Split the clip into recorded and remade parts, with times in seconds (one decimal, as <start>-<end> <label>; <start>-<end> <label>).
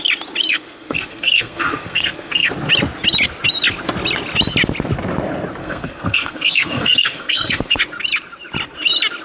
0.0-0.5 recorded; 0.5-2.5 remade; 2.5-5.6 recorded; 5.6-7.8 remade; 7.8-9.2 recorded